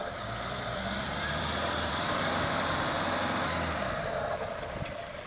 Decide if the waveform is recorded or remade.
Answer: remade